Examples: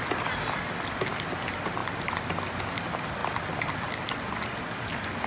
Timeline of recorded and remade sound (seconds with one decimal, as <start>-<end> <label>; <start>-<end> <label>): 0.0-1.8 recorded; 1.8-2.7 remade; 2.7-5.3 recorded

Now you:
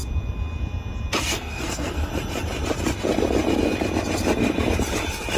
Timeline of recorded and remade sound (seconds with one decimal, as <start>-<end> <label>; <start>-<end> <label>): 0.0-1.2 recorded; 1.2-2.1 remade; 2.1-5.4 recorded

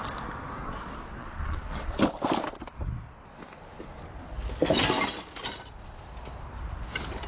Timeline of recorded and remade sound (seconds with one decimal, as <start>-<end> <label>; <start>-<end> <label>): 0.0-1.2 recorded; 1.2-2.0 remade; 2.0-7.3 recorded